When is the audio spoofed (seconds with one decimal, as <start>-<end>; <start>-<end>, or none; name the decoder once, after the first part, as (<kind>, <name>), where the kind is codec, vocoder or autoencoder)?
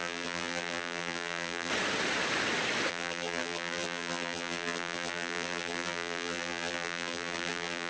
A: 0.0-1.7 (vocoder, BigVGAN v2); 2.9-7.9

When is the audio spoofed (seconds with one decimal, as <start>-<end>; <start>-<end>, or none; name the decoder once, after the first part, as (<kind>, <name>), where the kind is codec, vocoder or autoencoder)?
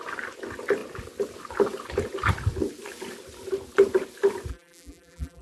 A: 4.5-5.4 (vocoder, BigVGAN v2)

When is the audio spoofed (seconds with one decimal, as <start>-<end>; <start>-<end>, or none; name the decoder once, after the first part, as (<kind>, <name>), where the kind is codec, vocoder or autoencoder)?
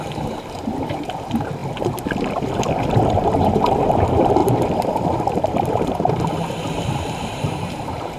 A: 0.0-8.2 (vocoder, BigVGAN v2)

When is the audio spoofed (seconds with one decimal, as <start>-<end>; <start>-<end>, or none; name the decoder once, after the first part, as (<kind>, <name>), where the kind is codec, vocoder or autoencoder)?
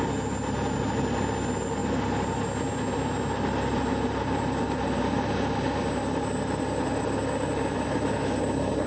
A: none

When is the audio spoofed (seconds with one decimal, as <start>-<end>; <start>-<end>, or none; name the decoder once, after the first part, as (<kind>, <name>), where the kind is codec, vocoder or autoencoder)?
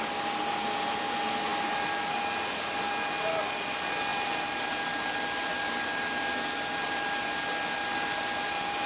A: 4.1-4.8 (vocoder, BigVGAN v2)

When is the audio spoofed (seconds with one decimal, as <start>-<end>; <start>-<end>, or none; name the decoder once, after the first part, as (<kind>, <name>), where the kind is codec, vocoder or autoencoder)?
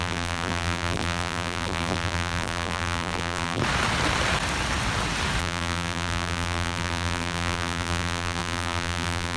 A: 0.0-3.6 (vocoder, BigVGAN v2); 5.4-9.4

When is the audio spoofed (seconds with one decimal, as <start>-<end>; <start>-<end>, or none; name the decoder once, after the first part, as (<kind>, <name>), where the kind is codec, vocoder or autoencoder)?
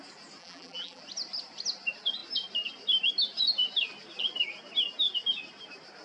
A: 0.4-1.0 (vocoder, BigVGAN v2)